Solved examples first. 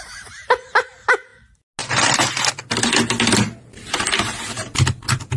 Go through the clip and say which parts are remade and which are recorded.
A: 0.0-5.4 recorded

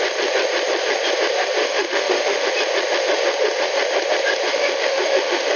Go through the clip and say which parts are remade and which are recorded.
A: 0.0-1.6 recorded; 1.6-2.5 remade; 2.5-4.5 recorded; 4.5-5.6 remade

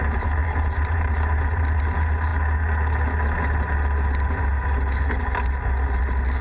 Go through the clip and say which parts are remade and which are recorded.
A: 0.0-0.4 recorded; 0.4-1.8 remade; 1.8-6.4 recorded

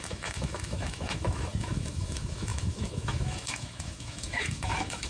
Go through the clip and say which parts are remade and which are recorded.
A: 0.0-5.1 remade

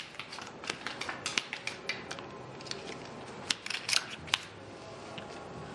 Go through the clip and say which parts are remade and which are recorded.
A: 0.0-5.7 recorded

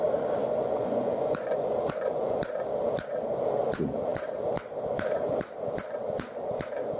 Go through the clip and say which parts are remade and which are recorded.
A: 0.0-0.4 recorded; 0.4-2.4 remade; 2.4-7.0 recorded

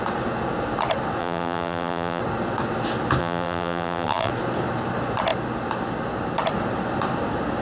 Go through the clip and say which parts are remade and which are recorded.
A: 0.0-1.2 recorded; 1.2-2.2 remade; 2.2-3.2 recorded; 3.2-4.3 remade; 4.3-7.6 recorded